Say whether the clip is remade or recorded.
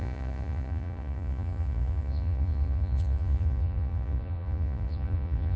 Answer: remade